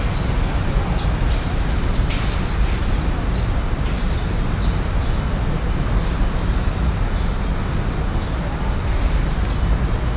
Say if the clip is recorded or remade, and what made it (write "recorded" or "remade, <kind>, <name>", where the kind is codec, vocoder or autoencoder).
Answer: recorded